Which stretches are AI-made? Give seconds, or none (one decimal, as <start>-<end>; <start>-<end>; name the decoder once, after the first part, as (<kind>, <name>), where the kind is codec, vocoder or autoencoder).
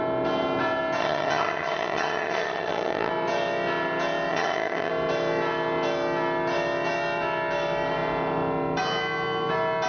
1.0-3.1 (vocoder, HiFi-GAN); 4.3-4.9